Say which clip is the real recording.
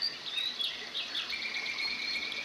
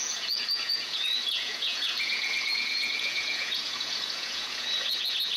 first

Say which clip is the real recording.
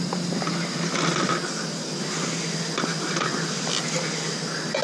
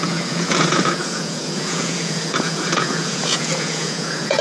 first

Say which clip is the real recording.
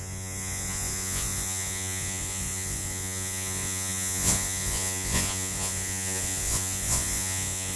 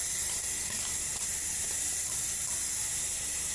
second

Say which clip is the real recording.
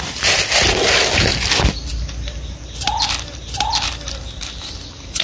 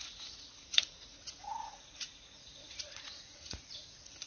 first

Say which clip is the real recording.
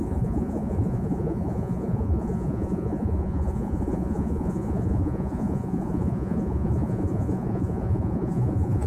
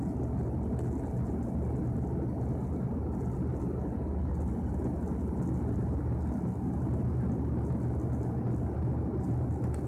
second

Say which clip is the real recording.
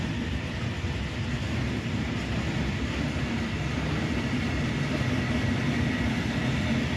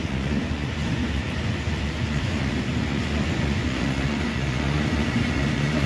first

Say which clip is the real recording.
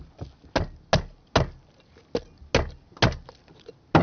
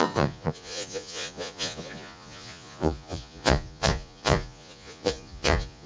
first